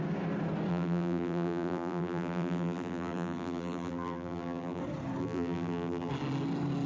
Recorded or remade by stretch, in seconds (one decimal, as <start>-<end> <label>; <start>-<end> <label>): 0.0-0.7 recorded; 0.7-4.8 remade; 4.8-5.2 recorded; 5.2-6.1 remade; 6.1-6.9 recorded